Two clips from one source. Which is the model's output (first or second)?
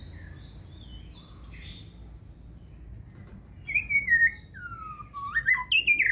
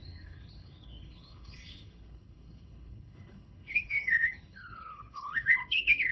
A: second